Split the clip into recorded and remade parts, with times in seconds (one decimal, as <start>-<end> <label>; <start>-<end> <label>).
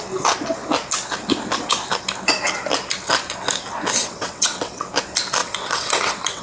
0.0-4.0 recorded; 4.0-4.9 remade; 4.9-5.4 recorded; 5.4-6.4 remade